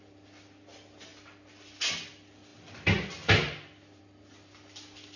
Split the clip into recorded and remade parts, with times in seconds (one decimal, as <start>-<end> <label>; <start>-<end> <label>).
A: 0.0-5.2 recorded

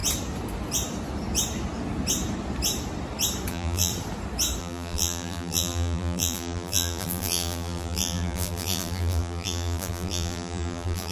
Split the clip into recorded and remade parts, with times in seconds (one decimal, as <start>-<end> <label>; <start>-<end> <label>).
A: 0.0-3.5 recorded; 3.5-3.9 remade; 3.9-4.6 recorded; 4.6-11.1 remade

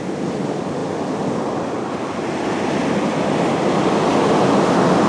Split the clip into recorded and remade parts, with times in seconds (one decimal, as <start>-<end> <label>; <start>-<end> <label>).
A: 0.0-0.8 recorded; 0.8-3.9 remade; 3.9-5.1 recorded

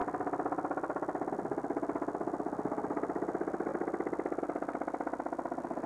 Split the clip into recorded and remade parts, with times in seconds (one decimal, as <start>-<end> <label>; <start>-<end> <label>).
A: 0.0-5.9 recorded

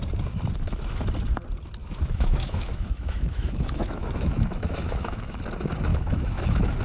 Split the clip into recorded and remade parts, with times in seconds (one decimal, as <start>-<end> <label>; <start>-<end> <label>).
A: 0.0-1.8 recorded; 1.8-5.4 remade; 5.4-5.9 recorded; 5.9-6.8 remade

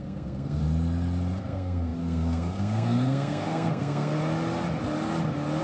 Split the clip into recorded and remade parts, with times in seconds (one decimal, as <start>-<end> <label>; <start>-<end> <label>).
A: 0.0-0.6 remade; 0.6-1.4 recorded; 1.4-4.2 remade; 4.2-5.6 recorded

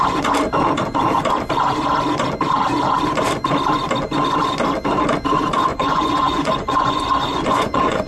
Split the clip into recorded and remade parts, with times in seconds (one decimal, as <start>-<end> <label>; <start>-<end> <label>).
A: 0.0-5.7 recorded; 5.7-8.1 remade

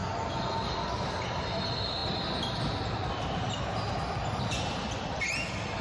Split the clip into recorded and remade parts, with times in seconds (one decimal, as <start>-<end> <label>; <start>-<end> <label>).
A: 0.0-0.6 remade; 0.6-5.8 recorded